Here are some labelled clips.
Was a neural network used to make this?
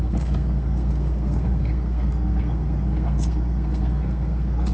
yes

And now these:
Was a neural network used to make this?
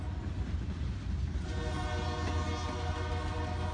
no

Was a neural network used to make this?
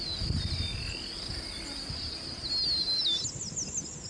no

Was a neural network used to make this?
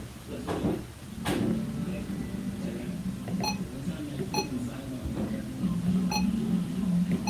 no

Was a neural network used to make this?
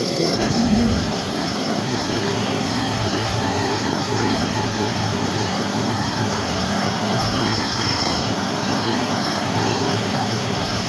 yes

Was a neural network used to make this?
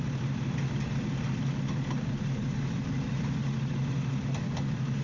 no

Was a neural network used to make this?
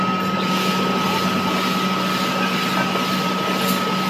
no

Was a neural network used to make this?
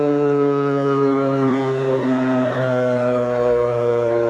yes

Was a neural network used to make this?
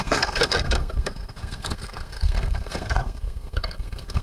yes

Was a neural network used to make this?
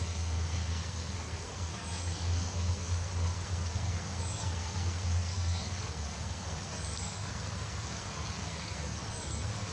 yes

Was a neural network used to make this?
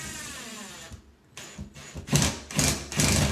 no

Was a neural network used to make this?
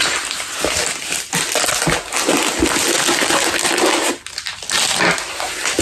no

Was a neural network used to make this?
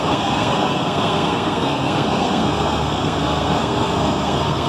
yes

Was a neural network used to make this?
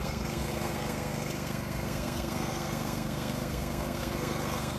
yes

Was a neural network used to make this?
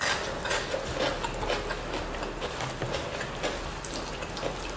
no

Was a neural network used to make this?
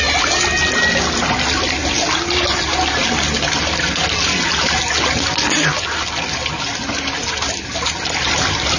no